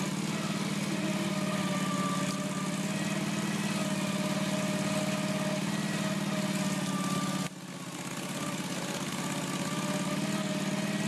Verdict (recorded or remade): recorded